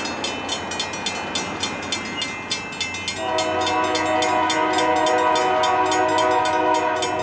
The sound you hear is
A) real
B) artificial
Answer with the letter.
A